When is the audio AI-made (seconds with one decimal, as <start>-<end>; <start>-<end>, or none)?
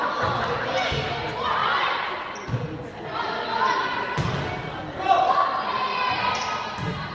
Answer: none